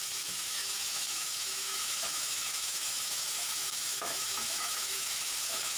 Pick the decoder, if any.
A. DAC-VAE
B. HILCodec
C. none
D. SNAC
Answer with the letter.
A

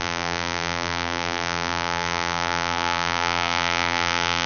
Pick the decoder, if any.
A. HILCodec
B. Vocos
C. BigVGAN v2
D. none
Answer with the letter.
C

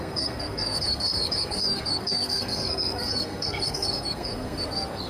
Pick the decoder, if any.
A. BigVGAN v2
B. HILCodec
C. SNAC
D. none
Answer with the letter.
C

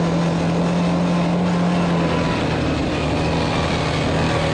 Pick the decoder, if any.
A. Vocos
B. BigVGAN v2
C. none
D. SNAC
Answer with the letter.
C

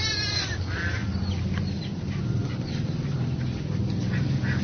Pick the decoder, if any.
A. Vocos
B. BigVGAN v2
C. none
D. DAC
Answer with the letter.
B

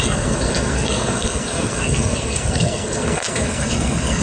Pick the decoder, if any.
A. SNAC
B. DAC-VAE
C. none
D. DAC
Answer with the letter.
A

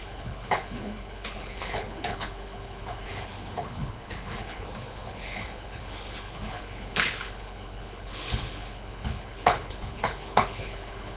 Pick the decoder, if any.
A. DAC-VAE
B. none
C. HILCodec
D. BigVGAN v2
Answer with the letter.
C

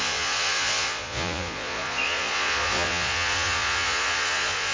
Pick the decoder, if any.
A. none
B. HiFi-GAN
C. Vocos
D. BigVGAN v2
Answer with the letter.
C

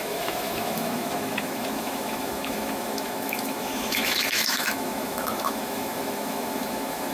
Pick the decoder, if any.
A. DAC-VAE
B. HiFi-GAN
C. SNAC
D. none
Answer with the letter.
A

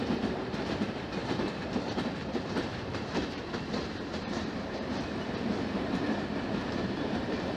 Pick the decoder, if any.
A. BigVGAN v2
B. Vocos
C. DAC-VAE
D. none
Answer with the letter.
A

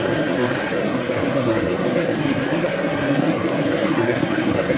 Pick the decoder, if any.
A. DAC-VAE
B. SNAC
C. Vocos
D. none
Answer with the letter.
B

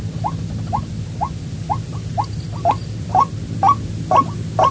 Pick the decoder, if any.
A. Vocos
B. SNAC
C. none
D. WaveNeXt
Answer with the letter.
C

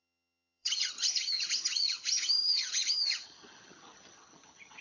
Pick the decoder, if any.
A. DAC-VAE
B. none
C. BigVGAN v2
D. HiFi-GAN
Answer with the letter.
D